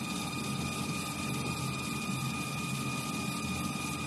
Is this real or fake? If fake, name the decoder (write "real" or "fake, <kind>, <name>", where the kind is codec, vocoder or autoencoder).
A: real